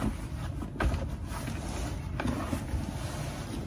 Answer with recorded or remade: recorded